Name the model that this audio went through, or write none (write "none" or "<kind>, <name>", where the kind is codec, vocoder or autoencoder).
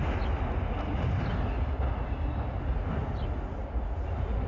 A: none